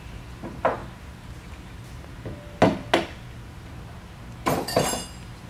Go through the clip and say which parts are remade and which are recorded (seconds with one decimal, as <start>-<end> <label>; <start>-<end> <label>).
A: 0.0-5.5 recorded